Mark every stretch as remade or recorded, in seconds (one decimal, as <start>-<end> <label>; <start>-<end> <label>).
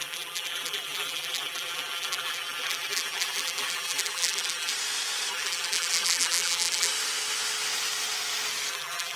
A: 0.0-4.7 remade; 4.7-5.3 recorded; 5.3-6.9 remade; 6.9-8.7 recorded; 8.7-9.2 remade